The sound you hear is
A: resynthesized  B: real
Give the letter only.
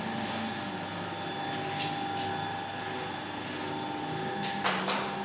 B